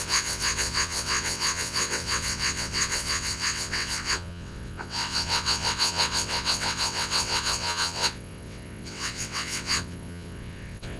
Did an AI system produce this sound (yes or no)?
yes